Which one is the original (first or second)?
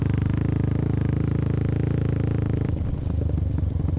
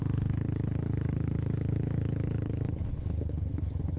first